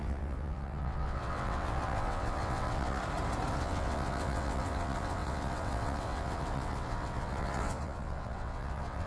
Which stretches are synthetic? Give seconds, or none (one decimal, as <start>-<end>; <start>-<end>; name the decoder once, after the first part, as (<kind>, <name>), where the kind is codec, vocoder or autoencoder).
0.0-3.0 (vocoder, WaveNeXt); 3.5-9.1